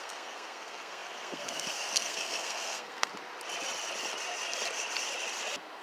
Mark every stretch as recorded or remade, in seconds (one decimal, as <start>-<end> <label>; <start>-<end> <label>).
0.0-3.1 remade; 3.1-5.8 recorded